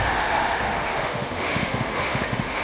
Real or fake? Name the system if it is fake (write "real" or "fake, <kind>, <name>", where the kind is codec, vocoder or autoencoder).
fake, autoencoder, DAC-VAE